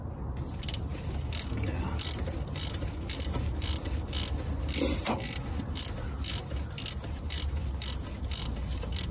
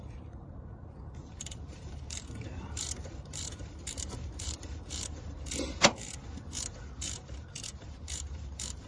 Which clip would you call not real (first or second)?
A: second